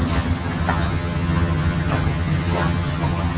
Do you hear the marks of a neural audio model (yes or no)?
yes